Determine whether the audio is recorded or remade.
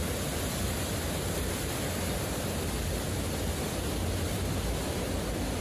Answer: recorded